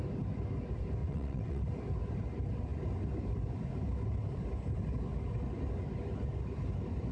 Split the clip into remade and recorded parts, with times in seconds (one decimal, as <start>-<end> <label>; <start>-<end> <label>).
0.0-1.0 recorded; 1.0-1.6 remade; 1.6-7.1 recorded